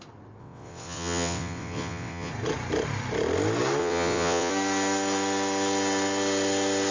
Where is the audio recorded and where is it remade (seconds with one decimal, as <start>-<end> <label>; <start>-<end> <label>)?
0.0-0.4 recorded; 0.4-2.3 remade; 2.3-3.8 recorded; 3.8-4.5 remade; 4.5-6.9 recorded